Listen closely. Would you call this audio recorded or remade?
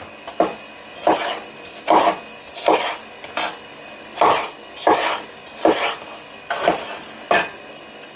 recorded